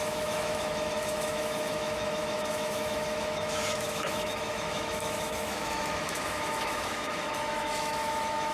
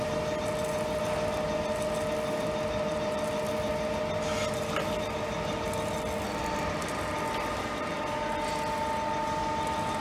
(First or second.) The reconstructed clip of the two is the first